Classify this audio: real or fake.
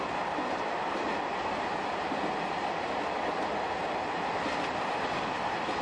real